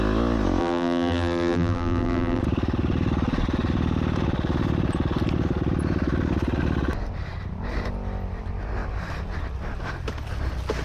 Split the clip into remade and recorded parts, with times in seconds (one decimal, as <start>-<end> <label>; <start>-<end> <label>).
0.0-0.6 recorded; 0.6-2.4 remade; 2.4-10.8 recorded